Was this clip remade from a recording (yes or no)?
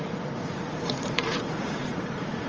yes